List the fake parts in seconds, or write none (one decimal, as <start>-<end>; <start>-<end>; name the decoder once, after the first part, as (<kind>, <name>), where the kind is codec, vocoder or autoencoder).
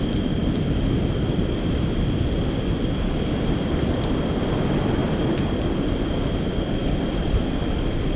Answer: none